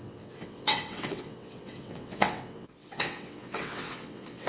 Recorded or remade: remade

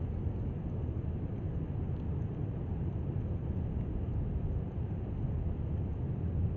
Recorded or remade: recorded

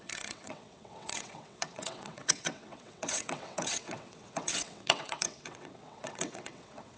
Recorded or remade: remade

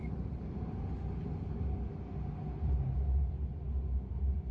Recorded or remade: recorded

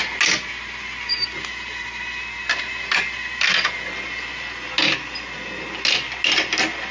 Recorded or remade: recorded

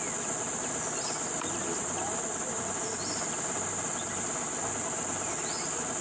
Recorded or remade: recorded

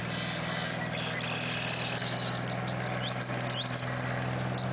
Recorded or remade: recorded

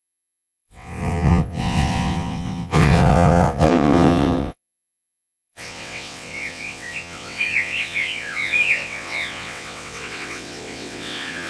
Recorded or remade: remade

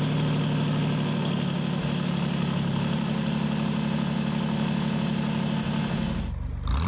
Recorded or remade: recorded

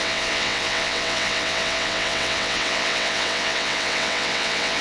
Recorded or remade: remade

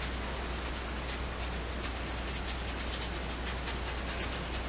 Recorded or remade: recorded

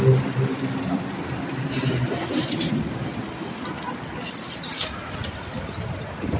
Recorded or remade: recorded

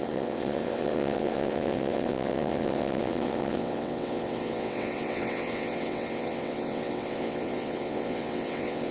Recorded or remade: remade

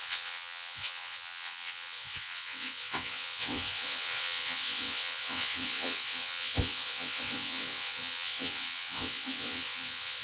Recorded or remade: remade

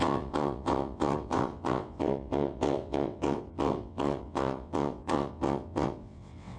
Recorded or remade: remade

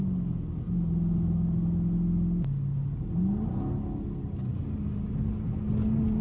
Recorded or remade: recorded